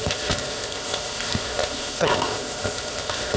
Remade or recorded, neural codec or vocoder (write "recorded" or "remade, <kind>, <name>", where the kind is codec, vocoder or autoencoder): remade, codec, ZipCodec